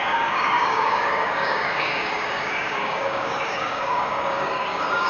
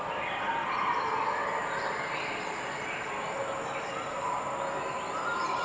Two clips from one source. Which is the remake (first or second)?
first